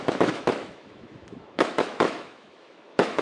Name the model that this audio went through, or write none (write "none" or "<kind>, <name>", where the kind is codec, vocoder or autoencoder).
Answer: autoencoder, DAC-VAE